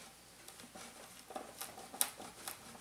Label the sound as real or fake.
real